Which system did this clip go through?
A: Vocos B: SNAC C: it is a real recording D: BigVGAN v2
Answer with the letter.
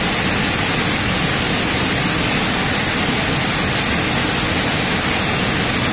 C